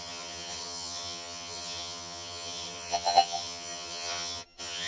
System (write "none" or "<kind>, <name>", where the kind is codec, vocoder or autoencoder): vocoder, HiFi-GAN